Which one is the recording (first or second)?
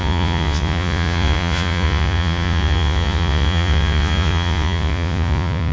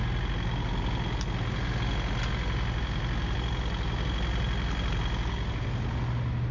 second